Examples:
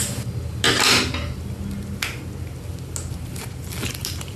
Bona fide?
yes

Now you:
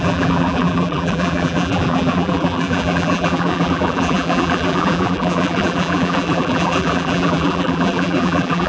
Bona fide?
no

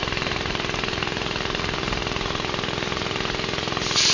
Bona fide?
no